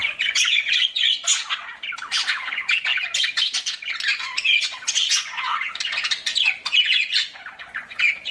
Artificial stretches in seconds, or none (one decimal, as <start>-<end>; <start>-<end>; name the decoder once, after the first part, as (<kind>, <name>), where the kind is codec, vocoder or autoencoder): 0.0-1.3 (vocoder, Vocos); 2.2-2.9; 4.1-8.3